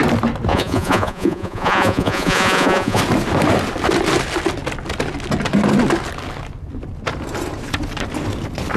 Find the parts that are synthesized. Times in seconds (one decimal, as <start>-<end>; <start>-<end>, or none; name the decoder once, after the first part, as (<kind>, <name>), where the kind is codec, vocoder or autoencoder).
0.5-3.0 (vocoder, Vocos)